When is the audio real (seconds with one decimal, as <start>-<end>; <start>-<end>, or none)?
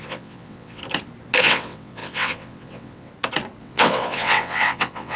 0.8-1.4; 3.1-3.6